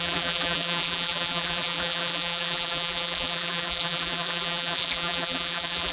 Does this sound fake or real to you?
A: fake